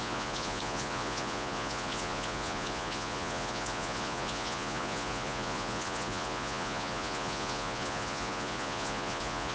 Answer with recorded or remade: remade